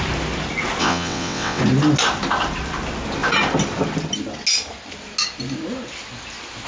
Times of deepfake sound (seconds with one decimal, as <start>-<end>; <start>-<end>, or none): 0.8-1.6